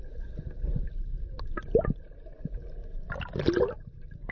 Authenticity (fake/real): real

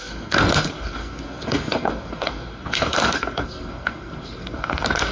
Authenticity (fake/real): fake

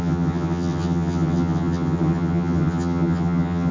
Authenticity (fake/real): fake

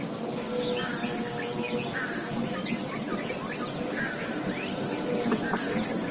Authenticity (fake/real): real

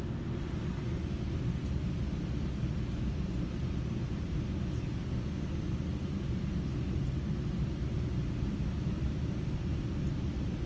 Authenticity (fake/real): real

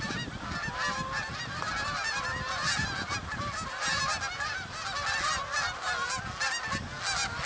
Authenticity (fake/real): real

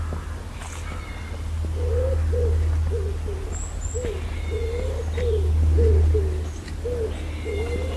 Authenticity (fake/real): real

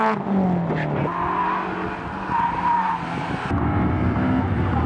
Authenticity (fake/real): real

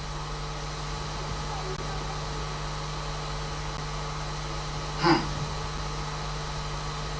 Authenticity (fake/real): real